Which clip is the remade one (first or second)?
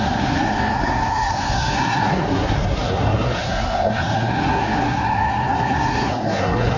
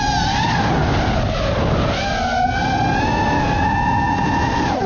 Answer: first